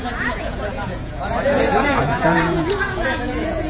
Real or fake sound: fake